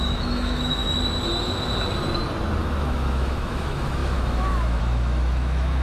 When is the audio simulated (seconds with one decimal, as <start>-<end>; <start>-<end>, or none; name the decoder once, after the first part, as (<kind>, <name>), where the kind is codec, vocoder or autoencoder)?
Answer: 0.0-0.8 (autoencoder, DAC-VAE); 2.6-5.8